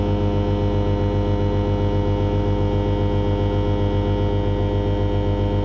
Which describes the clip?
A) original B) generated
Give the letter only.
A